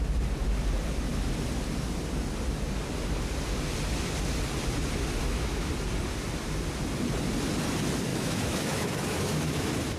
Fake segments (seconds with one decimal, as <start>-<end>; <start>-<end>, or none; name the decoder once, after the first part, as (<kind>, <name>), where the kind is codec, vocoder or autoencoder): 5.2-5.7 (autoencoder, DAC-VAE); 8.1-10.0